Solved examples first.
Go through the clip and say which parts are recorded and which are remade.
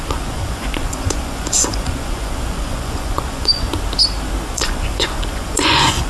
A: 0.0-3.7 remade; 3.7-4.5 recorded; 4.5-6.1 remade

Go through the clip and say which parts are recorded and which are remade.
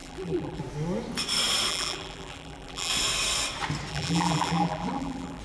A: 0.0-0.6 remade; 0.6-1.7 recorded; 1.7-2.9 remade; 2.9-3.9 recorded; 3.9-5.4 remade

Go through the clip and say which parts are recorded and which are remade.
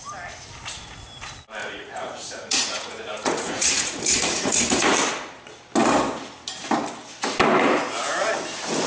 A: 0.0-1.6 recorded; 1.6-4.9 remade; 4.9-8.9 recorded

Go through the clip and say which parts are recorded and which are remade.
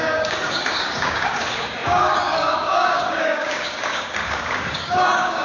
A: 0.0-5.4 remade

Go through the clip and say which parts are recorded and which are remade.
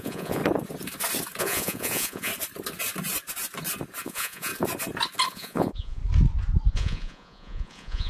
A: 0.0-0.4 remade; 0.4-1.4 recorded; 1.4-2.3 remade; 2.3-4.0 recorded; 4.0-4.5 remade; 4.5-5.3 recorded; 5.3-6.0 remade; 6.0-6.7 recorded; 6.7-8.1 remade